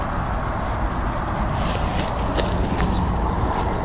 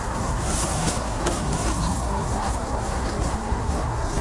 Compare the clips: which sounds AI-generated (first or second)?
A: second